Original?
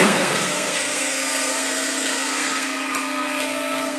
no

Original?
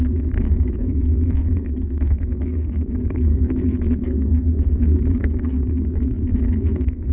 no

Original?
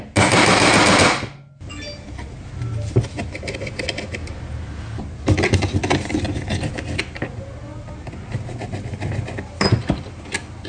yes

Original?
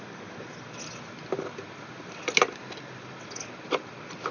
yes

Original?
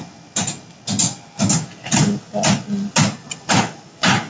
yes